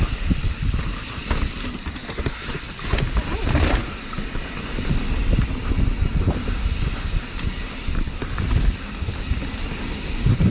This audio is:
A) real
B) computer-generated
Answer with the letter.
A